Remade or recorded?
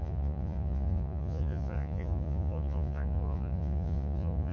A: remade